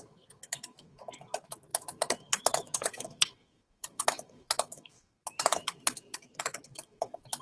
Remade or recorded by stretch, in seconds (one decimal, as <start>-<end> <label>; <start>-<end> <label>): 0.0-7.4 remade